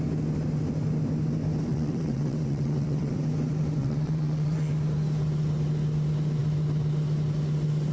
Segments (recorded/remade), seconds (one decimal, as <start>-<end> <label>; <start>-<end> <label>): 0.0-1.7 recorded; 1.7-3.1 remade; 3.1-3.8 recorded; 3.8-4.7 remade; 4.7-7.9 recorded